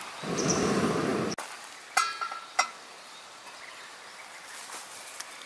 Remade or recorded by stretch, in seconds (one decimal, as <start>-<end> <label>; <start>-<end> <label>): 0.0-5.5 recorded

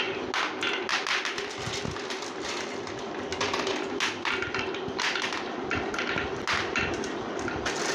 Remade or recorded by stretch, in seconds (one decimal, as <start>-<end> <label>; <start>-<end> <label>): 0.0-7.9 recorded

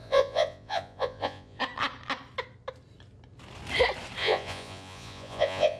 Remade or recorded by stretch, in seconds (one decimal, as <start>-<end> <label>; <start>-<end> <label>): 0.0-1.6 remade; 1.6-4.2 recorded; 4.2-5.8 remade

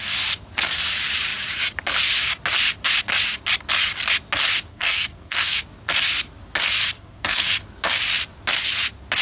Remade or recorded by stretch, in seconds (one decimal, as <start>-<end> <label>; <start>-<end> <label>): 0.0-4.7 recorded; 4.7-5.6 remade; 5.6-7.0 recorded; 7.0-7.5 remade; 7.5-9.2 recorded

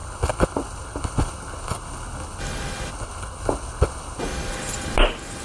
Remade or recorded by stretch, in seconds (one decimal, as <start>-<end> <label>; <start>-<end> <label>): 0.0-2.4 remade; 2.4-2.9 recorded; 2.9-4.2 remade; 4.2-5.4 recorded

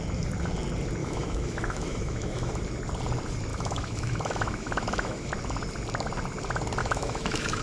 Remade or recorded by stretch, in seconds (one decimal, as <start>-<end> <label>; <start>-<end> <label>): 0.0-1.0 recorded; 1.0-2.6 remade; 2.6-3.5 recorded; 3.5-5.3 remade; 5.3-6.8 recorded; 6.8-7.6 remade

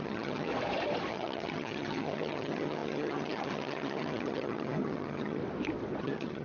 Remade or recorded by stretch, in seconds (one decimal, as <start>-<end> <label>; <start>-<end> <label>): 0.0-0.5 remade; 0.5-1.1 recorded; 1.1-5.4 remade; 5.4-6.0 recorded; 6.0-6.4 remade

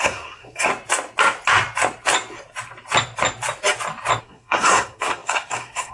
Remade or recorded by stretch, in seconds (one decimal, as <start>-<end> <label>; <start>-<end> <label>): 0.0-0.7 remade; 0.7-4.2 recorded; 4.2-5.9 remade